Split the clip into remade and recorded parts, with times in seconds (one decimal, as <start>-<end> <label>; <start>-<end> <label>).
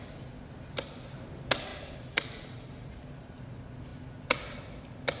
0.0-1.7 recorded; 1.7-3.4 remade; 3.4-5.2 recorded